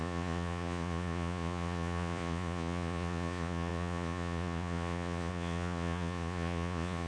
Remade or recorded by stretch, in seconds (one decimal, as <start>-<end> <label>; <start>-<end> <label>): 0.0-7.1 remade